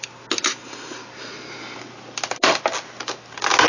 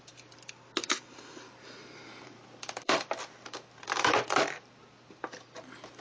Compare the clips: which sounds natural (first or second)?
first